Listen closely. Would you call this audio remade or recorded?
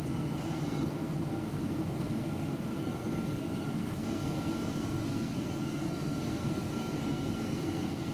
remade